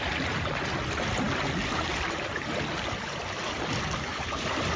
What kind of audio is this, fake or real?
real